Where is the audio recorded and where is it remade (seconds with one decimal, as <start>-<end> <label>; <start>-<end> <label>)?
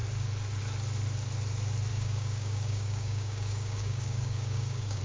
0.0-1.9 recorded; 1.9-5.0 remade